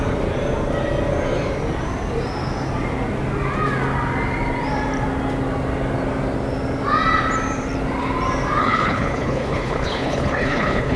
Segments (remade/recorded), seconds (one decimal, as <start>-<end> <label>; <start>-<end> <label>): 0.0-8.6 recorded; 8.6-11.0 remade